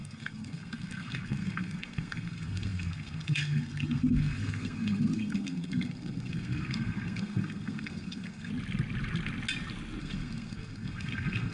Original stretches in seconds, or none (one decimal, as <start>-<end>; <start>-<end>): 8.5-10.0